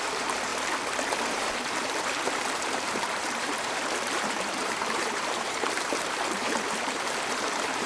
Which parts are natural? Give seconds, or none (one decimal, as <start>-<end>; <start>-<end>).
0.5-1.2